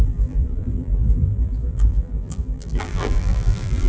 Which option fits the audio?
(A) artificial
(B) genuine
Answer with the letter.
A